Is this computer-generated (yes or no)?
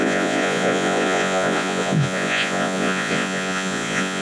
yes